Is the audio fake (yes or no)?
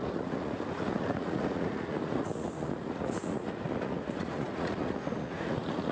yes